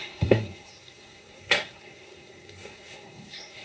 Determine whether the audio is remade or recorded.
remade